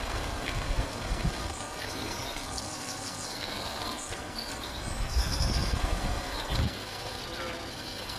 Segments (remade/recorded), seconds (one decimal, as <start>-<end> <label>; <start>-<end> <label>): 0.0-7.2 remade; 7.2-7.7 recorded; 7.7-8.2 remade